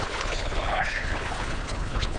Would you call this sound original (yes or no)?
no